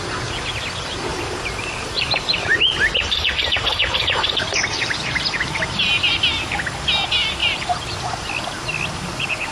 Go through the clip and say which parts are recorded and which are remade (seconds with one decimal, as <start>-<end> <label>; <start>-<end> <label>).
0.0-1.1 recorded; 1.1-6.0 remade; 6.0-7.4 recorded; 7.4-7.9 remade; 7.9-9.5 recorded